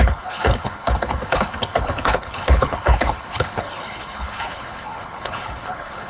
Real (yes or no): no